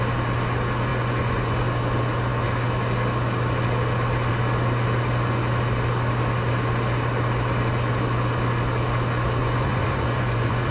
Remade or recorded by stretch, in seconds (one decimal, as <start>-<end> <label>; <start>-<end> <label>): 0.0-0.9 recorded; 0.9-1.6 remade; 1.6-9.4 recorded; 9.4-10.7 remade